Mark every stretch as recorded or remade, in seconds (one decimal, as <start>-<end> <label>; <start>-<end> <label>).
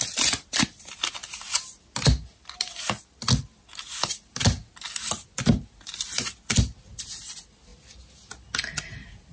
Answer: 0.0-9.3 recorded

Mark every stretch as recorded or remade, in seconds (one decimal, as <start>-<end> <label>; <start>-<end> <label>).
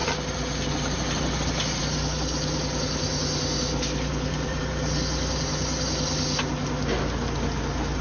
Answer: 0.0-4.1 recorded; 4.1-4.6 remade; 4.6-8.0 recorded